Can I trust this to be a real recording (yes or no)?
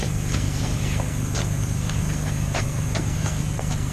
no